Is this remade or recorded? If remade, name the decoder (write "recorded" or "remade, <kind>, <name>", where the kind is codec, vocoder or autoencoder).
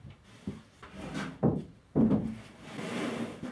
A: recorded